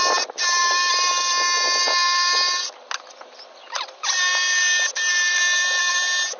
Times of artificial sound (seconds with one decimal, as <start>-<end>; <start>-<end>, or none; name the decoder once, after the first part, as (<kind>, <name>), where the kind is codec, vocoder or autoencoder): none